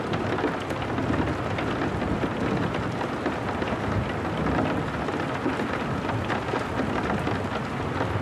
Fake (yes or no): no